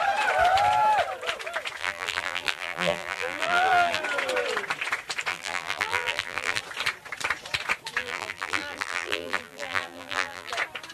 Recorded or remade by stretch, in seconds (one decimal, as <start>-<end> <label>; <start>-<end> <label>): 0.0-1.8 recorded; 1.8-4.0 remade; 4.0-5.3 recorded; 5.3-6.6 remade; 6.6-8.0 recorded; 8.0-10.5 remade; 10.5-10.9 recorded

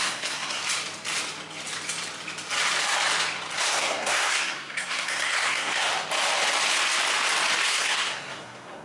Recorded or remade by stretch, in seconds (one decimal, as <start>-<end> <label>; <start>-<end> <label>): 0.0-0.6 remade; 0.6-3.6 recorded; 3.6-5.9 remade; 5.9-7.7 recorded; 7.7-8.8 remade

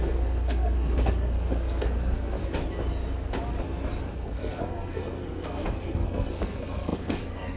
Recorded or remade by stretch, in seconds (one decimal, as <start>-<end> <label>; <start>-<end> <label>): 0.0-2.4 remade; 2.4-4.0 recorded; 4.0-7.6 remade

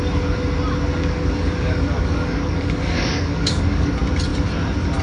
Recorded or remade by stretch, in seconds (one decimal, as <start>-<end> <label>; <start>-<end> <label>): 0.0-0.9 recorded; 0.9-3.9 remade; 3.9-5.0 recorded

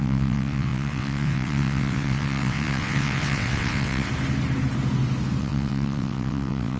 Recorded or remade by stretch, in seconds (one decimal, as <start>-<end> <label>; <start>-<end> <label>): 0.0-4.1 remade; 4.1-5.4 recorded; 5.4-6.8 remade

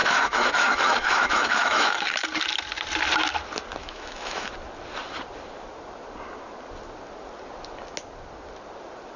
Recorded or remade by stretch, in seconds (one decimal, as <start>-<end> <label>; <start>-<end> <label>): 0.0-2.0 remade; 2.0-3.8 recorded; 3.8-4.5 remade; 4.5-9.2 recorded